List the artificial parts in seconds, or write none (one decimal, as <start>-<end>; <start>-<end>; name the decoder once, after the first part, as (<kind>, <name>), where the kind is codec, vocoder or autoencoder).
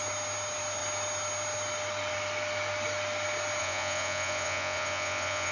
3.6-5.5 (vocoder, Vocos)